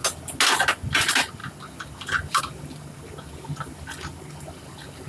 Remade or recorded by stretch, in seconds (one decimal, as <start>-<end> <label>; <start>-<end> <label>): 0.0-5.1 recorded